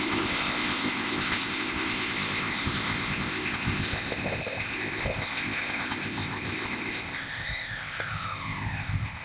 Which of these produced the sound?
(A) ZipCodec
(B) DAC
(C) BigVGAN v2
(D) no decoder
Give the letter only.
A